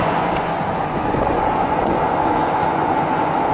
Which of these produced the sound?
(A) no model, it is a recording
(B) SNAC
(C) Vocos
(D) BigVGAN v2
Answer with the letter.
C